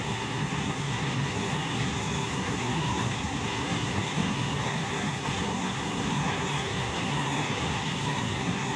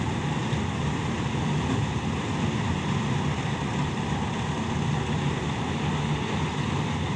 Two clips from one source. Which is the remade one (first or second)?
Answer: first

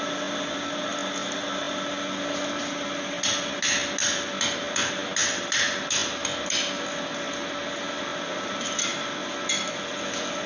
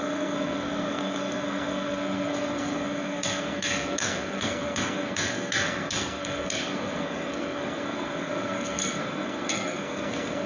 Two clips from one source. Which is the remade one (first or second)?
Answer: second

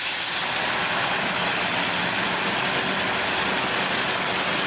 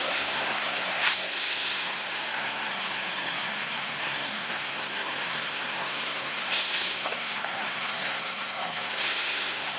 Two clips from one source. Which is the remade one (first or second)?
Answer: second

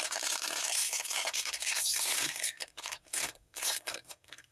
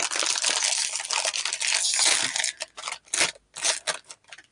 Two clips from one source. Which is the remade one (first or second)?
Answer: first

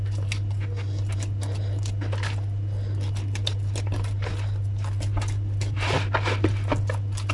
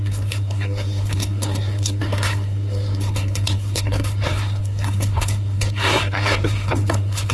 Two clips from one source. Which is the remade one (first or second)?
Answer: second